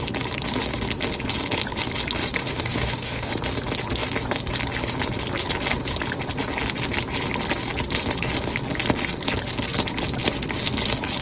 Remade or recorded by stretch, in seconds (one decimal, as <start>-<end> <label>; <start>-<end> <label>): 0.0-2.4 recorded; 2.4-3.3 remade; 3.3-11.2 recorded